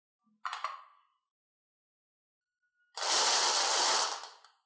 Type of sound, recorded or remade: recorded